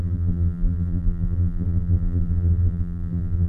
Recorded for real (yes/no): no